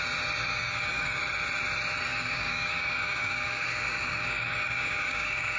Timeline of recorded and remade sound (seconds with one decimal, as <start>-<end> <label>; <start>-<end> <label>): 0.0-0.5 recorded; 0.5-1.2 remade; 1.2-2.1 recorded; 2.1-5.6 remade